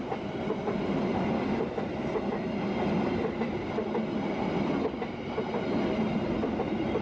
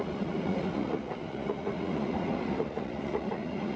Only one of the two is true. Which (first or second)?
first